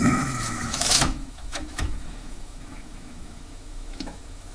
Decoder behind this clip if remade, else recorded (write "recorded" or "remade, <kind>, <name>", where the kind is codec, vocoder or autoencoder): remade, autoencoder, DAC-VAE